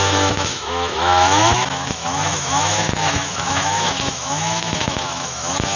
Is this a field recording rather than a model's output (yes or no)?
no